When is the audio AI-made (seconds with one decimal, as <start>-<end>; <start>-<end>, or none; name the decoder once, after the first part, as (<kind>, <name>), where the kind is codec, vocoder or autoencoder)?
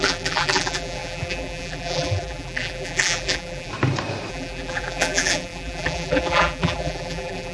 0.0-3.7 (vocoder, BigVGAN v2); 4.3-7.5